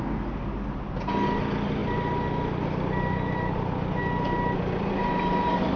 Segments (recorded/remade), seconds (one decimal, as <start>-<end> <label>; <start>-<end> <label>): 0.0-5.8 recorded